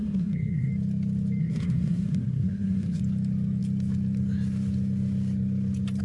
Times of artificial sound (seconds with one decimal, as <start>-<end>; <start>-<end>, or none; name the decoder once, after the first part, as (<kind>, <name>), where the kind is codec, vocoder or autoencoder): 0.0-0.7 (codec, SNAC); 1.4-3.0